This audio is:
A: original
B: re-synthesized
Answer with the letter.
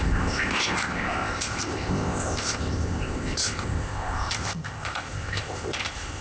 B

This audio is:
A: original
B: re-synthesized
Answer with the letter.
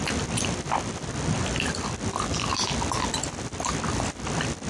A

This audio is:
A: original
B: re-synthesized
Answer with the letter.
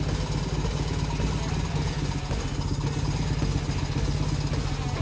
A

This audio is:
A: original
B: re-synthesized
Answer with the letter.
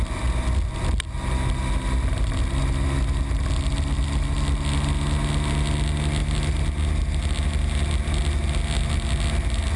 A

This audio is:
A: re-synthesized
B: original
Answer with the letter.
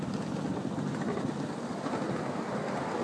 B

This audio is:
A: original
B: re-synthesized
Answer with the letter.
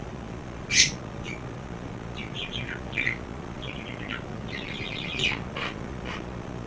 B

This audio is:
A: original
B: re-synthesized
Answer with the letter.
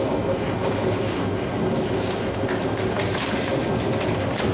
A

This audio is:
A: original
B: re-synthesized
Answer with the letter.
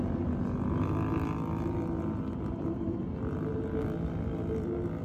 A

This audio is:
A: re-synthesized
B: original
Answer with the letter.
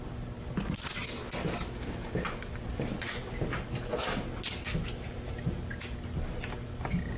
B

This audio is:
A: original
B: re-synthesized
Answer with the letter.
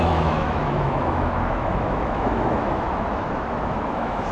B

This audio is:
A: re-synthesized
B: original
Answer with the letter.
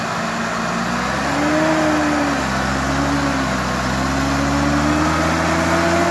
B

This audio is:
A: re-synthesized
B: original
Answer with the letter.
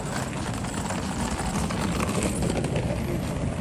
B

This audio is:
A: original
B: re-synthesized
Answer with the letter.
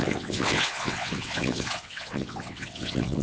B